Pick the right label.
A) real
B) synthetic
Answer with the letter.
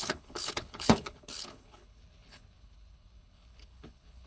B